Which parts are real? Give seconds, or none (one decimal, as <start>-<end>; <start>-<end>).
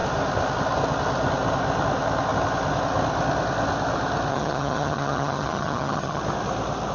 0.0-4.3; 6.2-6.9